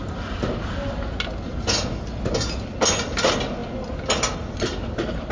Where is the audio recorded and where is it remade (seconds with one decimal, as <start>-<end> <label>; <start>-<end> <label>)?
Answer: 0.0-5.3 recorded